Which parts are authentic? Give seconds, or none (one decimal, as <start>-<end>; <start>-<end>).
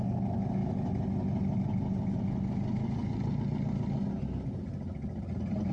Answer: 0.0-5.7